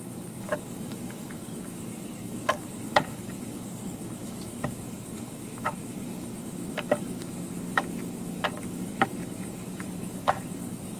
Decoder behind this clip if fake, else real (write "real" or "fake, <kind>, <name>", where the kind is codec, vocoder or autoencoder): fake, codec, DAC